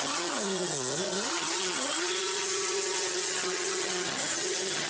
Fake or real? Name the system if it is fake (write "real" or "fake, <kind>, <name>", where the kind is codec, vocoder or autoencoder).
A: fake, vocoder, HiFi-GAN